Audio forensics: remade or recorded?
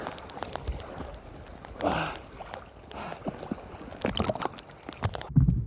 recorded